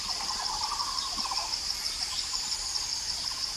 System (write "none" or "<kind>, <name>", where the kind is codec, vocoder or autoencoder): vocoder, BigVGAN v2